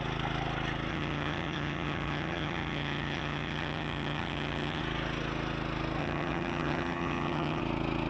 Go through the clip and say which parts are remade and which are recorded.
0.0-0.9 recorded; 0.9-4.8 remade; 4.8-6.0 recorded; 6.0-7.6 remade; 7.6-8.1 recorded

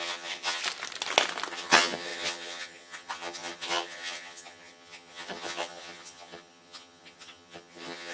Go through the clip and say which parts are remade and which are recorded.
0.0-0.6 remade; 0.6-1.5 recorded; 1.5-8.1 remade

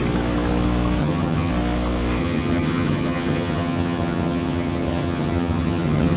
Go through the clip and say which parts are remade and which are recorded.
0.0-1.0 recorded; 1.0-1.5 remade; 1.5-2.2 recorded; 2.2-6.2 remade

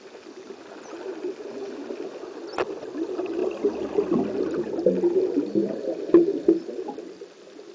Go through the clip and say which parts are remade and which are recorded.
0.0-7.7 recorded